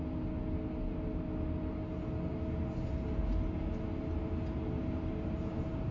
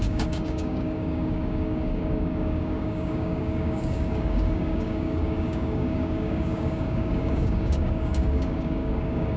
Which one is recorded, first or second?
first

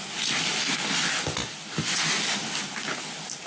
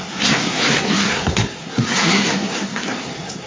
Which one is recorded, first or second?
first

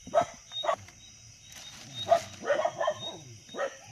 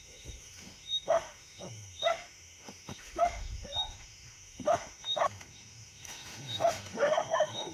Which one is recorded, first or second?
first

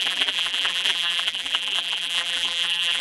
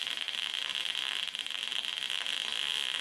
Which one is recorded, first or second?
second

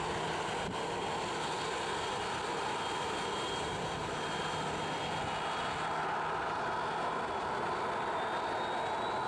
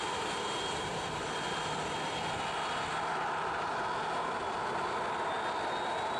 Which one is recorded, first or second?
first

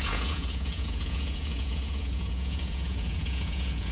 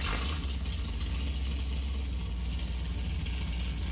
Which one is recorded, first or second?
second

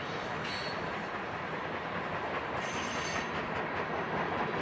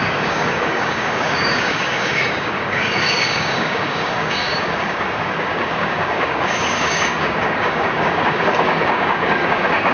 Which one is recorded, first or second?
first